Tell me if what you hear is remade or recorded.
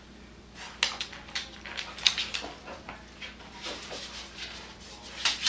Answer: recorded